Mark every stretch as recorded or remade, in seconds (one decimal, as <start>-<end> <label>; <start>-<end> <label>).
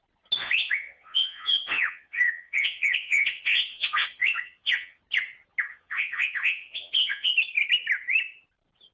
0.0-0.4 recorded; 0.4-5.0 remade; 5.0-5.7 recorded; 5.7-7.3 remade; 7.3-8.9 recorded